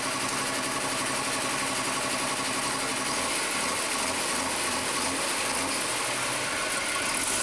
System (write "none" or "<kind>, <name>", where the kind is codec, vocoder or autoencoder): none